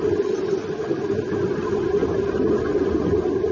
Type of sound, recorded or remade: recorded